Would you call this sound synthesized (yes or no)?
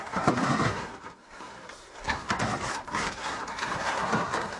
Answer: yes